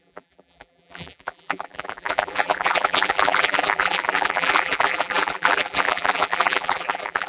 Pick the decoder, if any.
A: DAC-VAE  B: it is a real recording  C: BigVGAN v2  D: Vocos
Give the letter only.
C